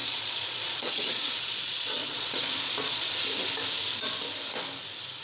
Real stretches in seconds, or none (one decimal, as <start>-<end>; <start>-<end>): 3.1-5.2